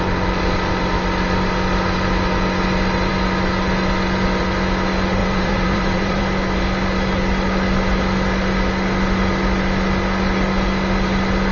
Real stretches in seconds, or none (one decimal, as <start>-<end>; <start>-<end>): 0.0-5.2; 6.2-11.5

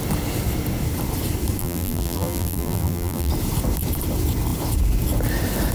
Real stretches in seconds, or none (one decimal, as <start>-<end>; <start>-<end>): 0.0-1.6; 3.3-5.7

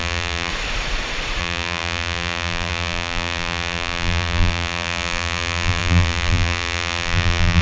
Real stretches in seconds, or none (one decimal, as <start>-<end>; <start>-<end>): 0.5-1.4

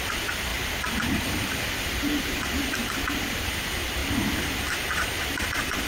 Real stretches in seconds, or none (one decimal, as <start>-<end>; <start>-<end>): 0.5-1.1; 4.0-5.5